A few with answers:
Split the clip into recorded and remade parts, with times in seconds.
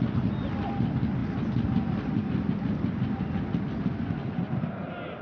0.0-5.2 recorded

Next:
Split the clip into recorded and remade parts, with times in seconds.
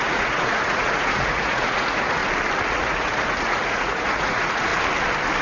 0.0-2.2 remade; 2.2-2.7 recorded; 2.7-4.7 remade; 4.7-5.4 recorded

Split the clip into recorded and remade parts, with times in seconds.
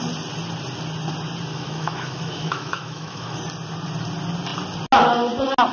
0.0-1.5 recorded; 1.5-3.4 remade; 3.4-5.7 recorded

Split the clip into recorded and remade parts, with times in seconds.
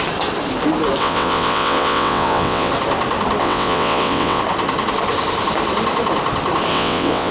0.0-1.0 recorded; 1.0-2.7 remade; 2.7-3.4 recorded; 3.4-4.4 remade; 4.4-6.7 recorded; 6.7-7.3 remade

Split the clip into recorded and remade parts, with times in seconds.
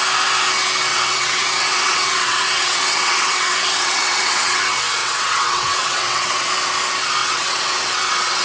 0.0-0.9 recorded; 0.9-4.6 remade; 4.6-5.0 recorded; 5.0-6.5 remade; 6.5-7.2 recorded; 7.2-8.4 remade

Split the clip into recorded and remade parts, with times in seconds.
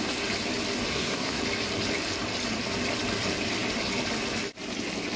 0.0-0.9 recorded; 0.9-1.4 remade; 1.4-5.2 recorded